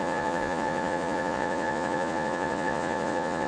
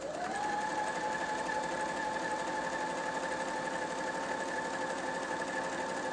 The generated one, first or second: first